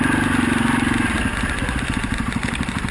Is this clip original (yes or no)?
yes